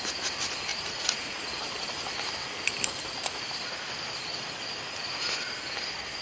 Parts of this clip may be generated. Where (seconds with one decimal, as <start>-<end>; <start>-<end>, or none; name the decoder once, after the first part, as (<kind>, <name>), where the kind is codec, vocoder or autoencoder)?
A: 0.7-1.6 (vocoder, Vocos)